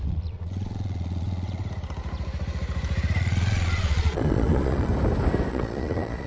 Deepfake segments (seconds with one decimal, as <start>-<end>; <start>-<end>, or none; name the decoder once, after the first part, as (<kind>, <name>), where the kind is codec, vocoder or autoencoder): 0.0-1.6 (vocoder, Vocos); 3.2-4.9; 5.5-6.3